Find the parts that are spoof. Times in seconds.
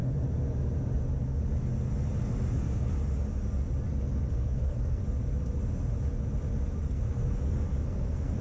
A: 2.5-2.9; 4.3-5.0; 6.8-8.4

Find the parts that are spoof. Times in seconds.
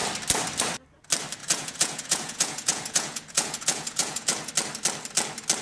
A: 1.4-4.5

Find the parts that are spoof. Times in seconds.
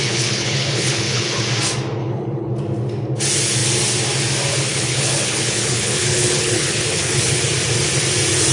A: 0.0-1.4; 2.0-2.5; 4.5-7.4